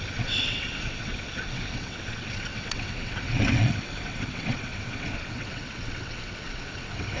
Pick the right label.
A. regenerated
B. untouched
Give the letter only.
A